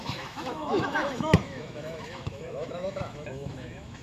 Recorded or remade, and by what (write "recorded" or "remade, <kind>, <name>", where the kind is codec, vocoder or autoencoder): remade, autoencoder, DAC-VAE